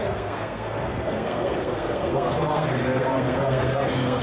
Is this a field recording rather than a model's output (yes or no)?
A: no